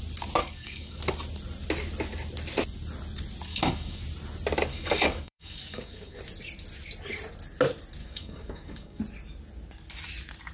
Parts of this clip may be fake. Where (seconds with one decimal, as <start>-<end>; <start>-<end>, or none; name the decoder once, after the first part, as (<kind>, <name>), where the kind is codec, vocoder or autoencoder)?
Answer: 0.4-1.0 (codec, DAC); 3.5-4.0; 4.7-6.2; 8.0-9.0